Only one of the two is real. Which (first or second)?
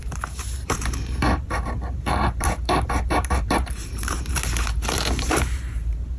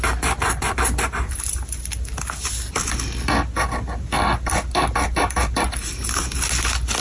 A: second